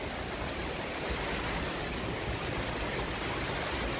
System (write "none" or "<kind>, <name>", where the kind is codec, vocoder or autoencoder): none